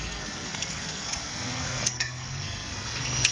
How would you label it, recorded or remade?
remade